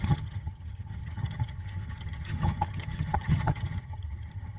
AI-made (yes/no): yes